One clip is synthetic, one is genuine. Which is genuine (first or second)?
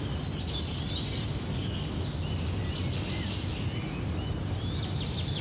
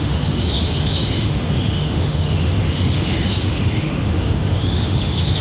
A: first